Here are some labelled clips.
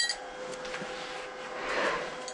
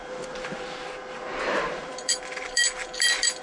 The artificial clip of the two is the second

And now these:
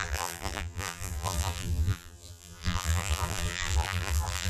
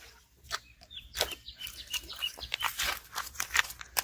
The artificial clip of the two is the first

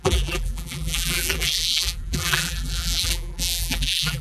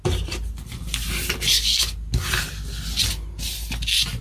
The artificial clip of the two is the first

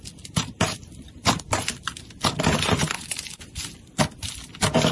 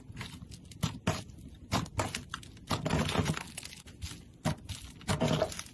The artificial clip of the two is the first